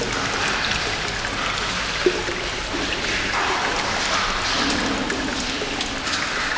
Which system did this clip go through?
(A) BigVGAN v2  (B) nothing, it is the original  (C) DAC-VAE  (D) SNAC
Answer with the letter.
B